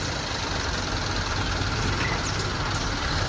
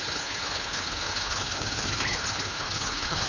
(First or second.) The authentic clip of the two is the first